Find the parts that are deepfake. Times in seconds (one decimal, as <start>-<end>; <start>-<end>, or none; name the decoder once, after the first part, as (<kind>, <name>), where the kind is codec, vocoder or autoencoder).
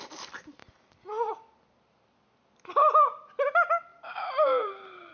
0.6-1.3 (vocoder, BigVGAN v2); 3.9-5.1